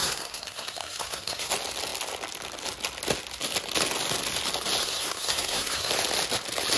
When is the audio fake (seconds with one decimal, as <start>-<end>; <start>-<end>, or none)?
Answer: 0.0-1.5; 4.8-5.9